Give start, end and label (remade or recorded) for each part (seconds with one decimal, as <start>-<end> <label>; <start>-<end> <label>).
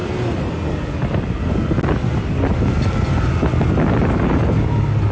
0.0-5.1 recorded